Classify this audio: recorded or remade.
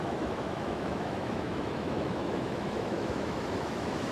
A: remade